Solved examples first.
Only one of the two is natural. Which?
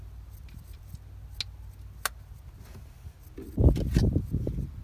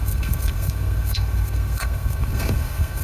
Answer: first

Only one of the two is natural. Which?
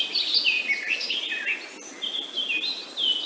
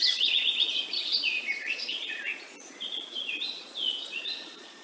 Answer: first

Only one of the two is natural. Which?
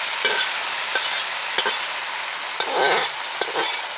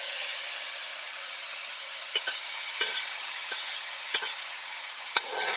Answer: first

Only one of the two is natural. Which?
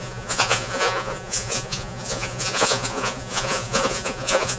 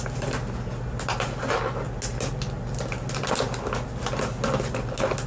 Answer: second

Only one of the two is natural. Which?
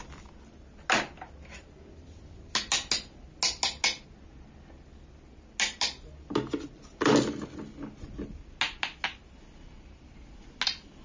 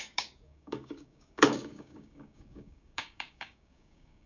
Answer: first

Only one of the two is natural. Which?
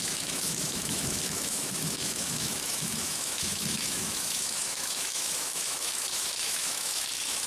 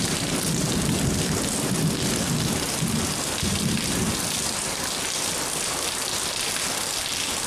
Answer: second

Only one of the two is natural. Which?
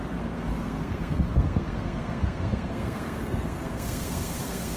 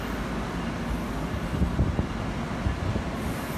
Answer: second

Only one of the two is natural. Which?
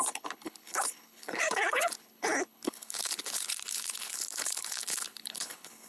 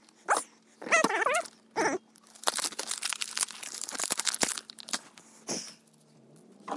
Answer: second